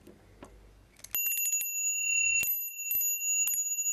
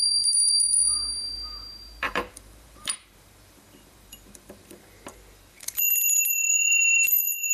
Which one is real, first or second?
first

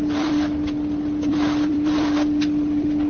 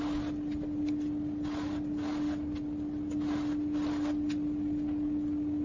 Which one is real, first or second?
second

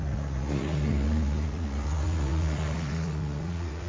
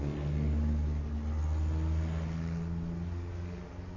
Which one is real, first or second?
second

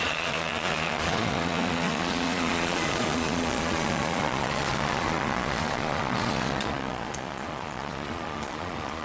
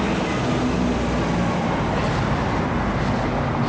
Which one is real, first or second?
second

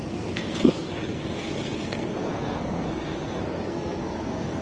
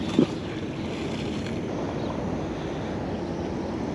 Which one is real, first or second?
second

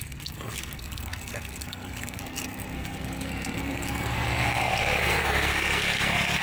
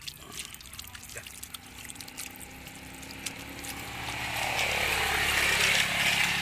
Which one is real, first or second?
second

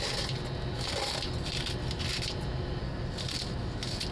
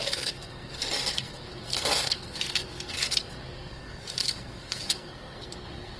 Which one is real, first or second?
first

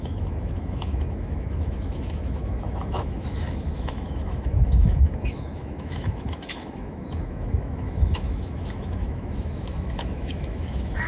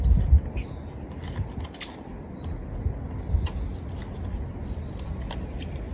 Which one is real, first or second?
second